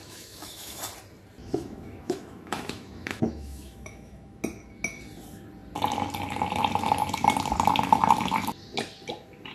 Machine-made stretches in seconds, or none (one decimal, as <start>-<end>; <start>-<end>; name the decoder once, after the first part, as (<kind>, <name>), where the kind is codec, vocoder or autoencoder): 0.0-0.8 (autoencoder, DAC-VAE); 1.4-4.4